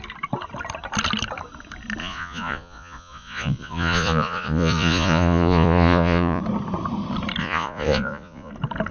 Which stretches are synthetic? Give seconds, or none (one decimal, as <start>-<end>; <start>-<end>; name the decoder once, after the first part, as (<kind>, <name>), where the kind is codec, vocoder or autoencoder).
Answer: 2.0-6.4 (vocoder, Vocos); 7.4-8.5